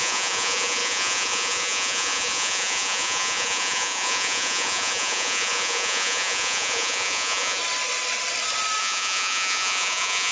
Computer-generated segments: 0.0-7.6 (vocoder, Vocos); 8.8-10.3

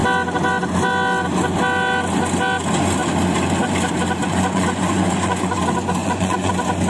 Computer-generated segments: 4.2-5.6 (vocoder, Vocos); 6.0-6.5

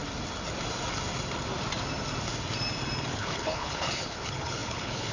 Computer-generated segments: 3.1-5.1 (codec, HILCodec)

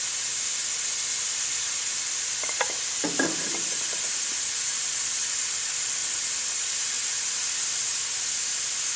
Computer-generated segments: none

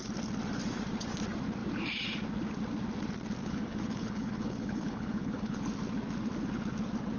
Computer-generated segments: 3.4-5.6 (codec, HILCodec)

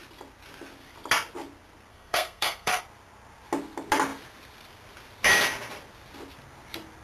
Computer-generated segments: 1.9-2.8 (codec, SNAC)

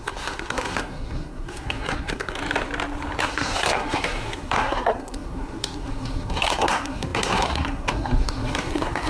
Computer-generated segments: 0.0-2.4 (codec, SNAC); 3.2-9.1